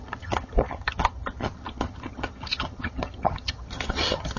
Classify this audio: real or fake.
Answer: fake